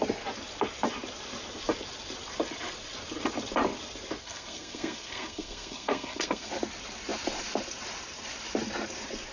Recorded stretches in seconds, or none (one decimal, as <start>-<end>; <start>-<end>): 0.0-4.2; 6.5-9.3